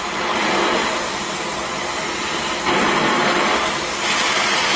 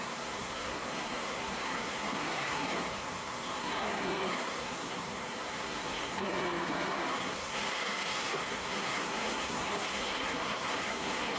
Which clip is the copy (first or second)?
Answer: second